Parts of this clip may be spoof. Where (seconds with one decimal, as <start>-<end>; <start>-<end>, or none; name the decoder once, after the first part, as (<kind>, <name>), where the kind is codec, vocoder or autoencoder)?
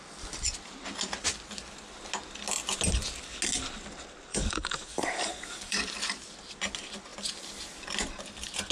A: 4.3-5.8 (codec, DAC)